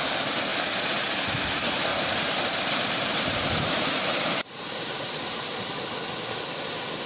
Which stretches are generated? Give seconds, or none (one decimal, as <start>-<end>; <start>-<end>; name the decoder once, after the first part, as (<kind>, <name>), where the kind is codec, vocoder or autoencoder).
1.9-5.9 (vocoder, BigVGAN v2)